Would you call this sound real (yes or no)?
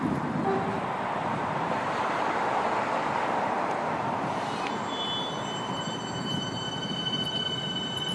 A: no